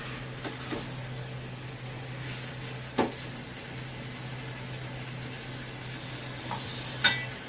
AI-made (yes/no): no